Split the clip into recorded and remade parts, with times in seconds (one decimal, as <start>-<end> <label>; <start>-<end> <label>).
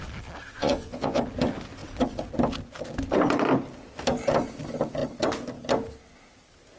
0.0-0.6 recorded; 0.6-1.2 remade; 1.2-6.8 recorded